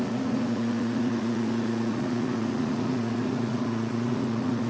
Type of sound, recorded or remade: remade